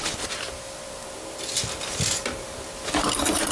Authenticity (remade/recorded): recorded